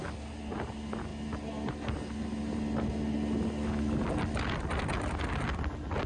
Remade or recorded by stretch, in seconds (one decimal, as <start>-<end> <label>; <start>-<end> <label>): 0.0-6.1 recorded